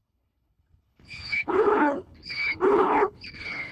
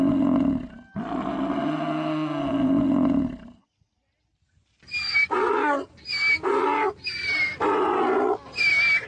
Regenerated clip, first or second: first